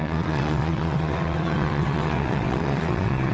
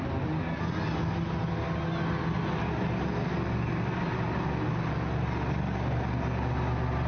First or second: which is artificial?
first